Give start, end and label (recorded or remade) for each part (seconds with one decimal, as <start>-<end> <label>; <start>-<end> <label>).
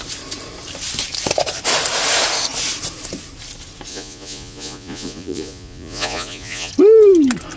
0.0-3.9 recorded; 3.9-6.7 remade; 6.7-7.6 recorded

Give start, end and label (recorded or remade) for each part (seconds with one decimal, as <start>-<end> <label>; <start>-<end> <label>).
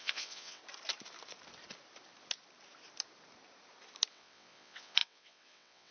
0.0-0.6 remade; 0.6-4.1 recorded; 4.1-5.9 remade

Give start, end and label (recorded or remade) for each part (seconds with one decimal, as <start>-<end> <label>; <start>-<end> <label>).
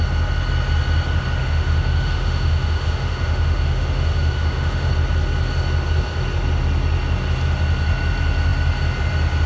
0.0-1.4 recorded; 1.4-4.9 remade; 4.9-9.5 recorded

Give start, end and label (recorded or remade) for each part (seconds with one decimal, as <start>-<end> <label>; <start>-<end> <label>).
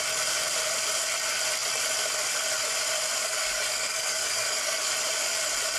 0.0-3.2 recorded; 3.2-4.9 remade; 4.9-5.8 recorded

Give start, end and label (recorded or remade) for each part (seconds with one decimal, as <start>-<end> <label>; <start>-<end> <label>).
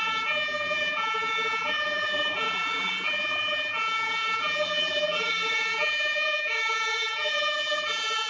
0.0-8.3 remade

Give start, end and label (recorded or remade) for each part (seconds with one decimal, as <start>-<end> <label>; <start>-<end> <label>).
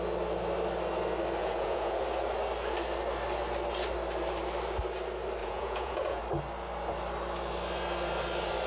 0.0-1.4 recorded; 1.4-2.0 remade; 2.0-5.4 recorded; 5.4-6.2 remade; 6.2-8.7 recorded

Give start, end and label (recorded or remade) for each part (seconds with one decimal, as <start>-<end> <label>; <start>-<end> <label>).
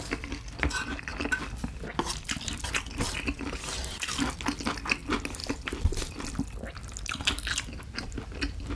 0.0-8.8 recorded